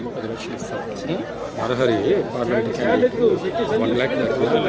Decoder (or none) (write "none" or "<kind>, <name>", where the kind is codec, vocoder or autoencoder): vocoder, BigVGAN v2